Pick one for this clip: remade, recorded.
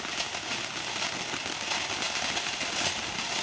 recorded